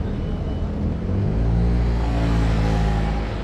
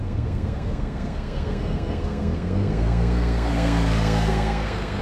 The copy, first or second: second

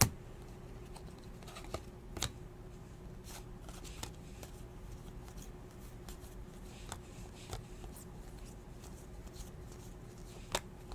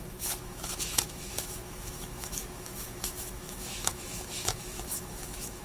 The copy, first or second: second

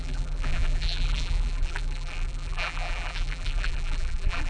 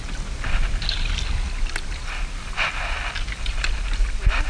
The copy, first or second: first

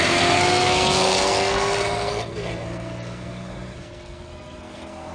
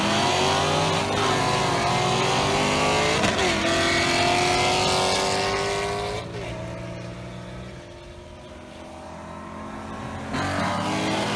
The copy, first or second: first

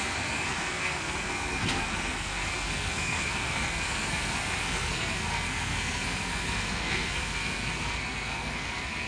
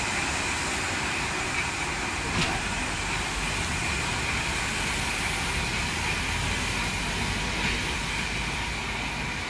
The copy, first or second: first